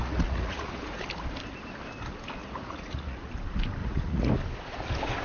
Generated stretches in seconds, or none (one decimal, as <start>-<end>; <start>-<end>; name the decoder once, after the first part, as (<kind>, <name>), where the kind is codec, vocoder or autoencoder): 0.0-1.0 (vocoder, Vocos); 2.4-3.3; 3.8-4.3